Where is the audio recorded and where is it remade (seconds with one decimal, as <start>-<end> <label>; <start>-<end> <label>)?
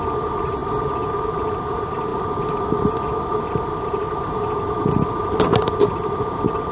0.0-6.7 recorded